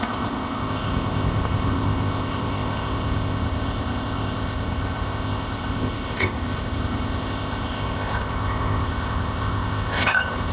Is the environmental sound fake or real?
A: fake